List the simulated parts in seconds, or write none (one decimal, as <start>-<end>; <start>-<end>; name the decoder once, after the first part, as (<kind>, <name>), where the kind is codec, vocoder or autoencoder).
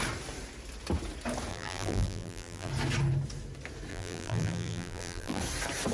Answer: 1.5-2.7 (vocoder, BigVGAN v2); 3.9-5.4